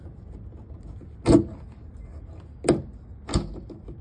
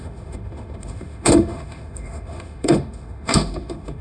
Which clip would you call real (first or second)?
first